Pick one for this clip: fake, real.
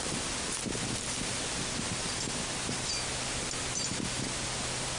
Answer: real